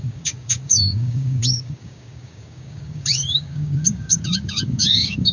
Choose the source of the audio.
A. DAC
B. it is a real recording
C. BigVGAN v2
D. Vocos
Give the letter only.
A